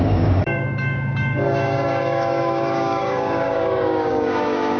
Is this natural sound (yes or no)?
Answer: no